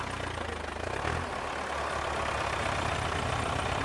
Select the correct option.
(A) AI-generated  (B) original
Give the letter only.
B